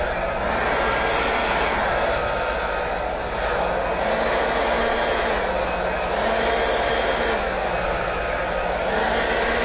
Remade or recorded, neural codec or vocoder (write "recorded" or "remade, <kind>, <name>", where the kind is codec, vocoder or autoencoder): recorded